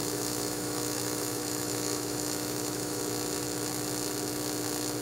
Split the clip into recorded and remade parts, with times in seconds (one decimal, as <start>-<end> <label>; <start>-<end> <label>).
0.0-3.0 remade; 3.0-5.0 recorded